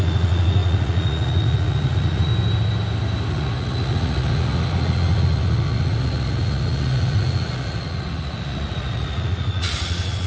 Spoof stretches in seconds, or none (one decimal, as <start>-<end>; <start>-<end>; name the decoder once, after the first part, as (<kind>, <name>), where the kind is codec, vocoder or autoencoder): 0.0-2.3 (vocoder, Vocos); 3.3-10.3